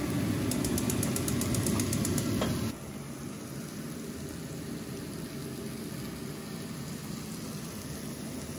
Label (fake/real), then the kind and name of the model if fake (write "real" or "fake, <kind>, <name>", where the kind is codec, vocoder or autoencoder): real